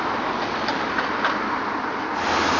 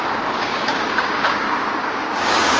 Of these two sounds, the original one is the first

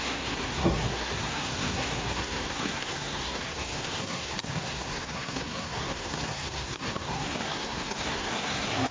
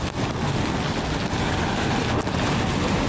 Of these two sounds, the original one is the second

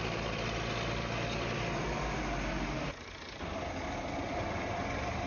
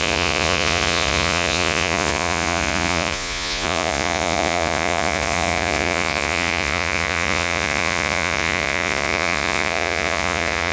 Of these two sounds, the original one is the first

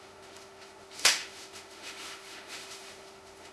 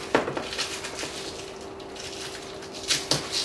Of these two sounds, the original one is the second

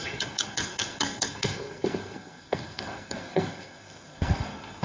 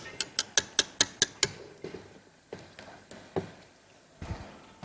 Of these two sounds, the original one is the second